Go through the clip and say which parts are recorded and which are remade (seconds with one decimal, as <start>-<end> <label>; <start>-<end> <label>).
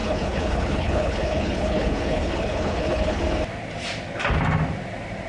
0.0-3.2 remade; 3.2-5.3 recorded